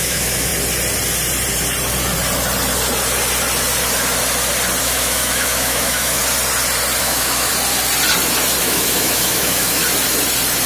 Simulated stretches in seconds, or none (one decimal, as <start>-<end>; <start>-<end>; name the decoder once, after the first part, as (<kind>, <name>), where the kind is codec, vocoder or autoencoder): 0.0-0.5 (autoencoder, DAC-VAE); 4.8-6.2; 7.0-7.5; 8.6-9.8